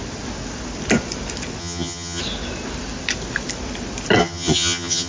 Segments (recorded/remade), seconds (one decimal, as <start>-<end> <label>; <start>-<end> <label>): 0.0-1.6 recorded; 1.6-2.2 remade; 2.2-4.2 recorded; 4.2-5.1 remade